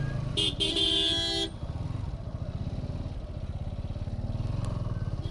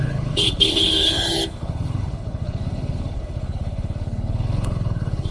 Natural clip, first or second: first